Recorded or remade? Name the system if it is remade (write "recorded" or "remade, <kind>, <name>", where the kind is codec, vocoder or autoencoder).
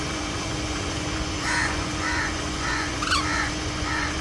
remade, vocoder, Vocos